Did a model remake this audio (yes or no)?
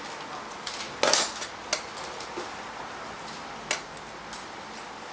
no